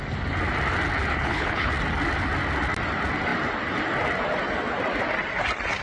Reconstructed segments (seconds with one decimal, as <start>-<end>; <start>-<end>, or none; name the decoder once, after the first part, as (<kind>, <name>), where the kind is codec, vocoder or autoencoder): 1.1-1.7 (codec, HILCodec)

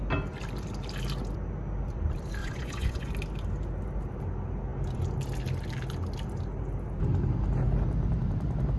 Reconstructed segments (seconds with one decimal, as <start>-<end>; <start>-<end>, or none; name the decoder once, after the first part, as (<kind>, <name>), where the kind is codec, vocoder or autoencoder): 2.4-3.1 (vocoder, Vocos)

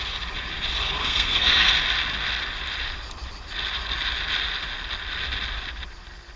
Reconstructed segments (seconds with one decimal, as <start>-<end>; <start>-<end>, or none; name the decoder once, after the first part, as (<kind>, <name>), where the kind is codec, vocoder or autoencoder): 1.0-1.7 (codec, SNAC)

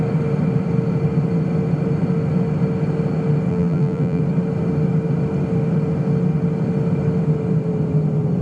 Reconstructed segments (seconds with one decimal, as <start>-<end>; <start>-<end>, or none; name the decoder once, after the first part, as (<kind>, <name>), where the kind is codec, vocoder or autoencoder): 3.5-4.2 (vocoder, BigVGAN v2)